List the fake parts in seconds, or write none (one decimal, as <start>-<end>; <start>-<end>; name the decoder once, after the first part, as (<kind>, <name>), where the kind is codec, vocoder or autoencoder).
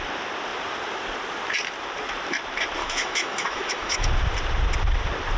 2.8-4.1 (autoencoder, DAC-VAE)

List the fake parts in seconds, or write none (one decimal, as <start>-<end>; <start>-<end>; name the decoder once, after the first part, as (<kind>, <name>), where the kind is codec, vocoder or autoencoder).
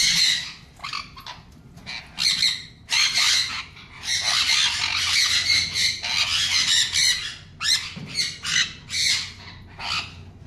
none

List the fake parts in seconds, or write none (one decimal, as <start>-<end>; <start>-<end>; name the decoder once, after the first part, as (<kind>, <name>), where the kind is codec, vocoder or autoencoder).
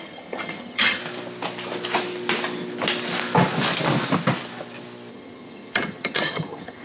0.0-1.0 (vocoder, HiFi-GAN); 5.1-6.8